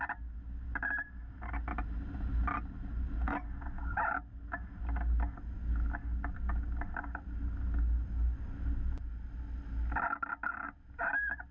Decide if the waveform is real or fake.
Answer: real